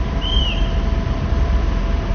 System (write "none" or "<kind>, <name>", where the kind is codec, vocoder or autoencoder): vocoder, BigVGAN v2